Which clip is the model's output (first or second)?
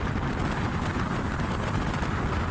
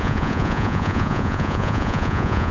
second